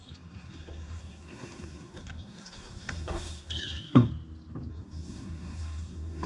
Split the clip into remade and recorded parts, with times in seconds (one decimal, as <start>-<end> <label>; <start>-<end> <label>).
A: 0.0-4.1 remade; 4.1-4.7 recorded; 4.7-6.3 remade